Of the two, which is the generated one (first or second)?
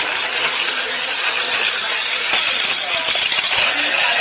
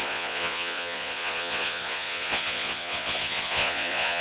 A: second